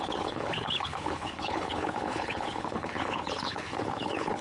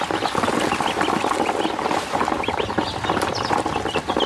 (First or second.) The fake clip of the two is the first